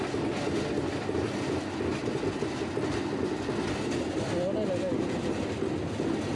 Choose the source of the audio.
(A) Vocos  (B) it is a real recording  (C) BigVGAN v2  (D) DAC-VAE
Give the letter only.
B